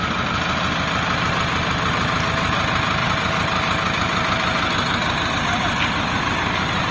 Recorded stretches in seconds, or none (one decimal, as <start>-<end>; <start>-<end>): 0.0-6.9